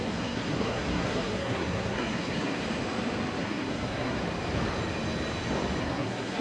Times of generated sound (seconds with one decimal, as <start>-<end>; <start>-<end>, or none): 0.0-2.6; 3.4-4.2; 5.8-6.4